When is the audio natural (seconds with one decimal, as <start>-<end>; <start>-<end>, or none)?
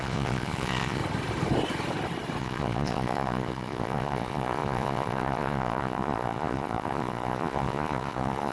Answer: 1.0-2.4